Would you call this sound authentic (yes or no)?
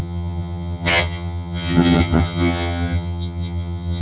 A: no